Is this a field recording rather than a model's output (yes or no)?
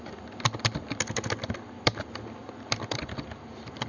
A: yes